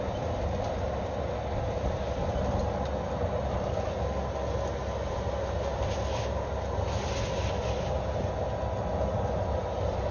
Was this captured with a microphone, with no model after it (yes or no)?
yes